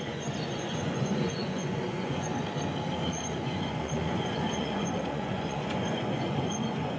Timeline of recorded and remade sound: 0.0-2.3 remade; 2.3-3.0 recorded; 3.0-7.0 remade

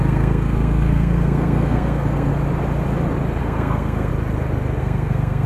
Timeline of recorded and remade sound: 0.0-2.3 remade; 2.3-3.4 recorded; 3.4-4.1 remade; 4.1-4.8 recorded; 4.8-5.5 remade